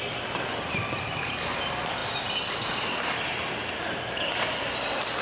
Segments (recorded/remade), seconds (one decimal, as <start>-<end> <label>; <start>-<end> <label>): 0.0-5.2 recorded